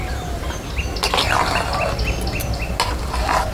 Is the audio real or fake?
real